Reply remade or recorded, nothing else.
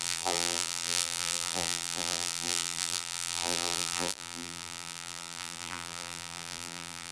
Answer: remade